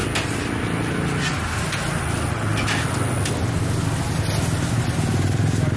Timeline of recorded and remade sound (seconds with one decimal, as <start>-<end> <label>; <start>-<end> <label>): 0.0-5.8 recorded